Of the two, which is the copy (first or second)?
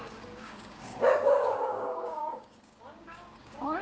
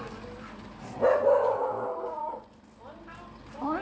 first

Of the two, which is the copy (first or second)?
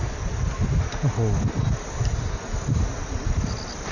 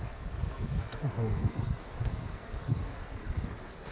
second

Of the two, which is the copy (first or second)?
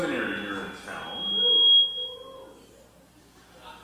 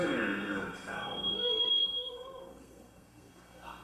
second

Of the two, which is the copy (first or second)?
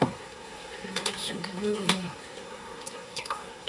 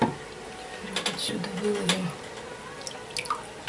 first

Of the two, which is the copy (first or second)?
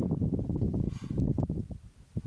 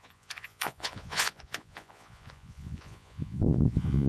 second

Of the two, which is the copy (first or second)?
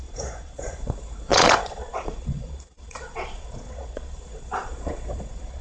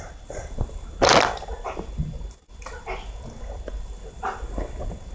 first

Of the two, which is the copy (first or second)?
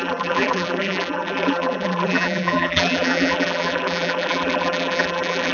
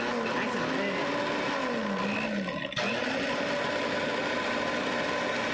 first